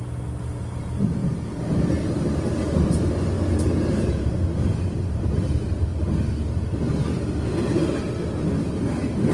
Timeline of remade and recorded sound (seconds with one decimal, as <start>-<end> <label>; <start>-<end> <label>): 0.0-1.2 recorded; 1.2-1.8 remade; 1.8-9.3 recorded